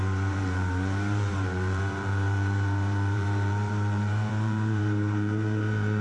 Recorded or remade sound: remade